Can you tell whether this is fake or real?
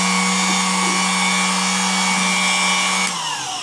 real